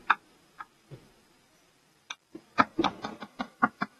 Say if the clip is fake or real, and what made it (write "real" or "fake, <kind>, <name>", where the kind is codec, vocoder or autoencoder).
fake, vocoder, BigVGAN v2